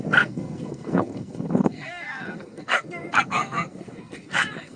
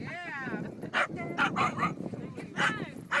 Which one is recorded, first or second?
second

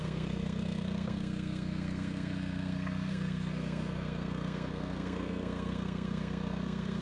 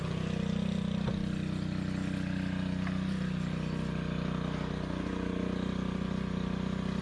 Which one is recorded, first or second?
second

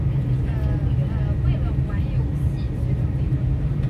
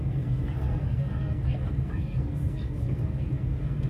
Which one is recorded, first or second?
first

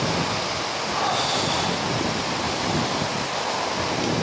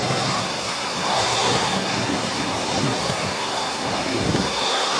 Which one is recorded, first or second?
first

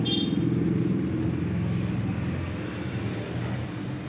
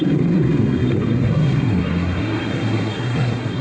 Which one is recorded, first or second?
first